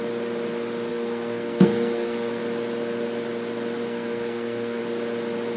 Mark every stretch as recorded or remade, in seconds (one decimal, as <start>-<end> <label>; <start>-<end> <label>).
0.0-0.9 recorded; 0.9-2.4 remade; 2.4-3.8 recorded; 3.8-4.8 remade; 4.8-5.6 recorded